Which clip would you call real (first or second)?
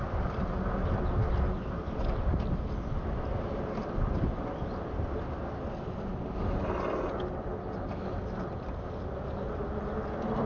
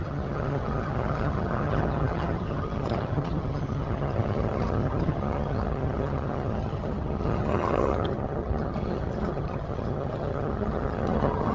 first